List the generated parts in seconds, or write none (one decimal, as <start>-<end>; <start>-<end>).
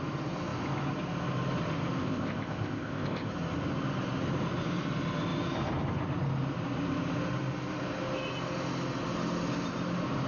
2.0-3.3